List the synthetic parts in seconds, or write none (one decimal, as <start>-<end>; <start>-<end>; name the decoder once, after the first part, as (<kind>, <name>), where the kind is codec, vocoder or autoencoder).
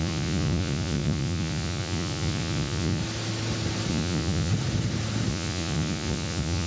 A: 0.0-3.0 (vocoder, Vocos); 3.9-4.5; 5.3-6.7